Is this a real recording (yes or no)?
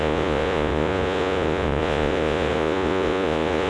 no